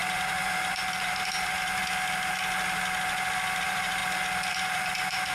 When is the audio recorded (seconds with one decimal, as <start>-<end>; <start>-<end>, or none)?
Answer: 1.8-3.6; 4.0-4.5